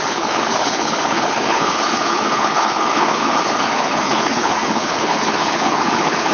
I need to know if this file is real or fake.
fake